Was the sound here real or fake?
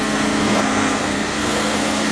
fake